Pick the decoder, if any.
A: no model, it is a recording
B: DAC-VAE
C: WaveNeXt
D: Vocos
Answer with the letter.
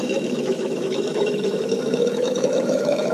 B